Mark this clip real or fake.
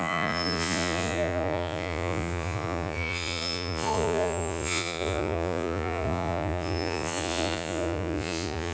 fake